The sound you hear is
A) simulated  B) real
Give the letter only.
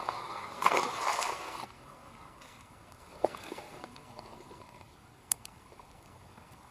A